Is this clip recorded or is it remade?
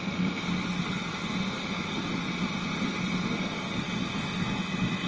recorded